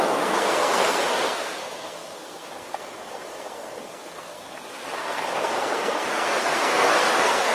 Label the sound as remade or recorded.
remade